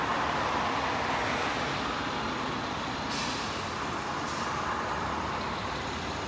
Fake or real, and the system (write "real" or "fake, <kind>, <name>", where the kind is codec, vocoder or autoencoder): real